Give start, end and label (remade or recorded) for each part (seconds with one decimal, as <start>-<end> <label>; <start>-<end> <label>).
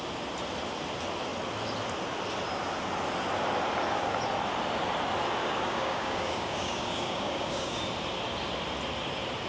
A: 0.0-5.4 recorded; 5.4-7.8 remade; 7.8-9.5 recorded